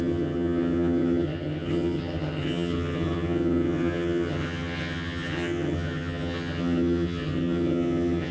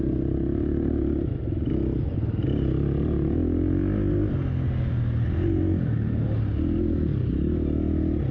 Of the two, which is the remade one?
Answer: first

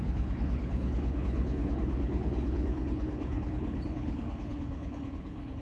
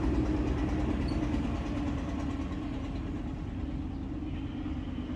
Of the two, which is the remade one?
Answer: first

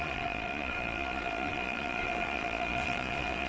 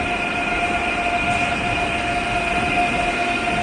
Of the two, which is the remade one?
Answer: first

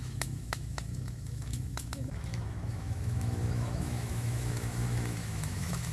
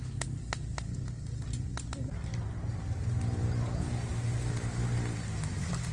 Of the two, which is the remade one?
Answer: first